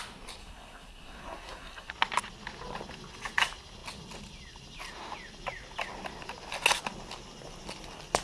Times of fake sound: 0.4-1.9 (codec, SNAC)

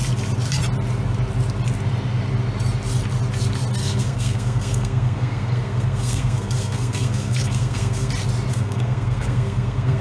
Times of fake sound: 3.8-8.1 (codec, SNAC); 8.5-10.0